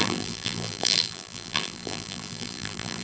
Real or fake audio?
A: fake